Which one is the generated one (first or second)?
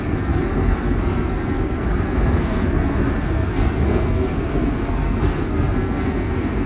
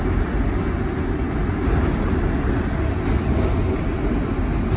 first